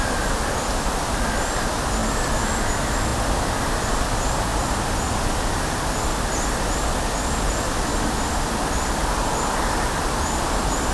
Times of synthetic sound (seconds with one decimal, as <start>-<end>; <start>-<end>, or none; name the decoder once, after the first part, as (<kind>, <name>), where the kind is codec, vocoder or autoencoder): none